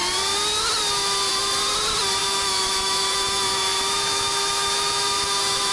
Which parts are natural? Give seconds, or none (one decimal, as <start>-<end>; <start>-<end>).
0.0-2.2